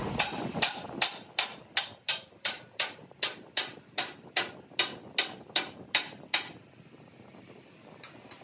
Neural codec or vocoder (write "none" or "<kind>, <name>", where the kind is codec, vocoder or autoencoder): none